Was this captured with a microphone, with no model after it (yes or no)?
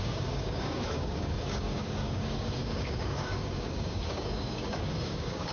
no